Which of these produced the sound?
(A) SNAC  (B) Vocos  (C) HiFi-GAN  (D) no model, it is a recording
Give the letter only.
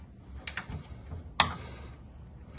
D